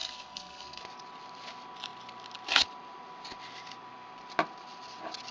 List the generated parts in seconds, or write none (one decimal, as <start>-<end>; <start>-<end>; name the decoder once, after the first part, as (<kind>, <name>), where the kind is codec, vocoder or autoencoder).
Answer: 0.0-0.8 (codec, SNAC)